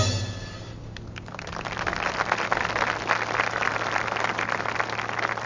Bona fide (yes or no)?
yes